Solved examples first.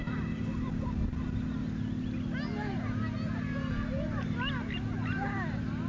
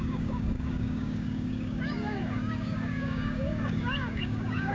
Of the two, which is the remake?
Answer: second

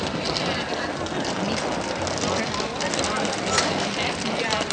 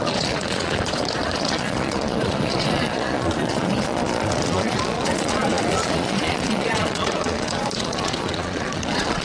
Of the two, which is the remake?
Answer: second